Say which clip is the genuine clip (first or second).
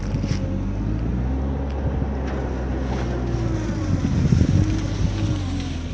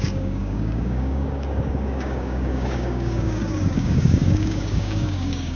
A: first